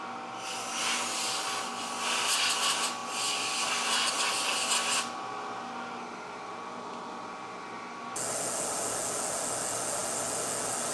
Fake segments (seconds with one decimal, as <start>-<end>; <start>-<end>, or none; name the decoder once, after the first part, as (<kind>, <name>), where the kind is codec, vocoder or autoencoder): none